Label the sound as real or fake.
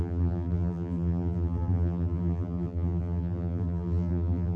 fake